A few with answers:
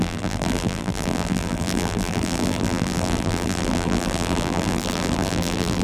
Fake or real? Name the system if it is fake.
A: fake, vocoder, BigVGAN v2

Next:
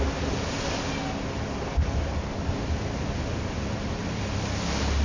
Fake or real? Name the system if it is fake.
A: real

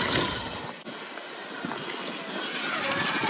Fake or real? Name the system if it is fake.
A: real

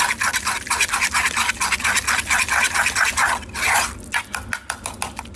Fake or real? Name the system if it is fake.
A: real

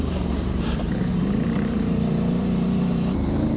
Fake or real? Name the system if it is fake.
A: fake, vocoder, BigVGAN v2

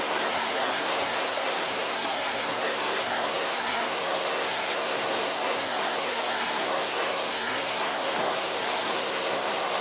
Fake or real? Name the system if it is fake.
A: fake, codec, SNAC